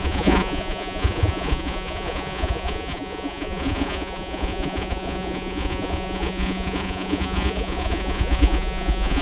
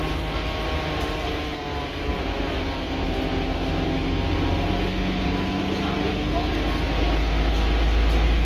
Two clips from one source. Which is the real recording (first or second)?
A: second